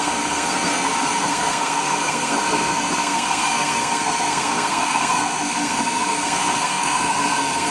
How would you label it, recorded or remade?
remade